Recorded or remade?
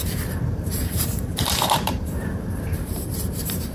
remade